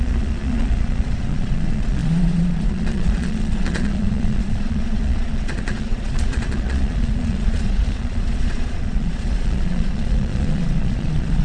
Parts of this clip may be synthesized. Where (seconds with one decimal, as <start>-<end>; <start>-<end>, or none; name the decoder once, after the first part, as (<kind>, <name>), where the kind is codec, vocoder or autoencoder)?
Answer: 0.0-11.4 (vocoder, Vocos)